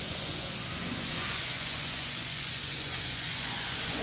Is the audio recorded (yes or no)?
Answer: no